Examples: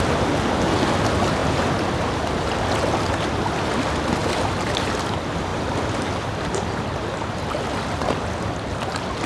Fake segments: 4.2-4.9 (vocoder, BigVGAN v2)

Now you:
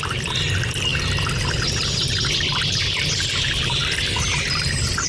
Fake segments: 2.1-4.0 (vocoder, BigVGAN v2)

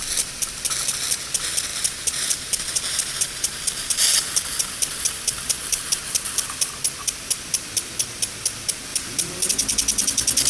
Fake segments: 1.7-5.8 (vocoder, BigVGAN v2)

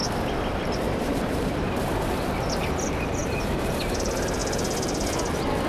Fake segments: 0.6-4.4 (vocoder, BigVGAN v2)

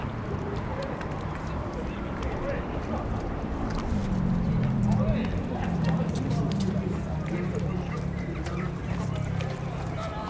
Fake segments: 0.0-4.0 (vocoder, BigVGAN v2); 4.5-10.3